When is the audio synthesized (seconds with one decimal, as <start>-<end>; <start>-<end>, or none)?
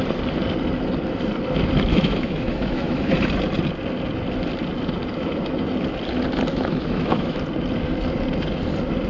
1.9-3.1; 6.5-7.4